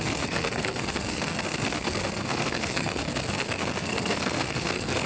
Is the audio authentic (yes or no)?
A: no